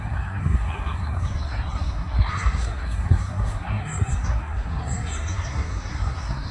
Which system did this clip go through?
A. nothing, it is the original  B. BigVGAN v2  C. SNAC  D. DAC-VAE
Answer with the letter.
C